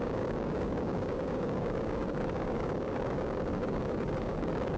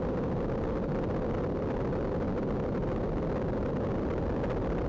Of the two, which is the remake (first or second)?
first